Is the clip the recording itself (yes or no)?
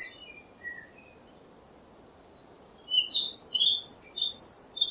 yes